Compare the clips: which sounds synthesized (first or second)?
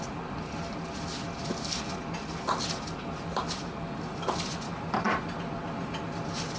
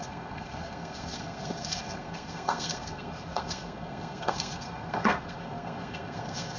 second